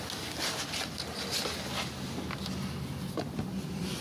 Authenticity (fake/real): real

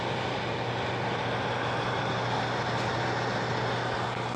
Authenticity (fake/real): real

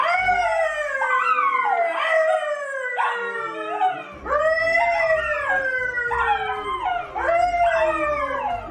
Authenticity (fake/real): real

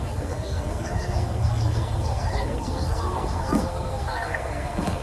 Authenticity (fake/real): fake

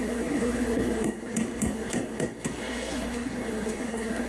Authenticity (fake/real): fake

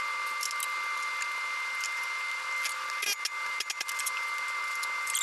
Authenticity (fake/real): real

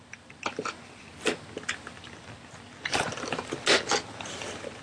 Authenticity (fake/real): real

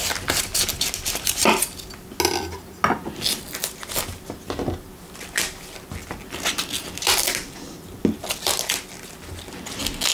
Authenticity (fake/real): real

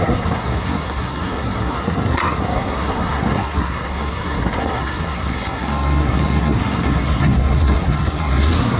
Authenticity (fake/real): fake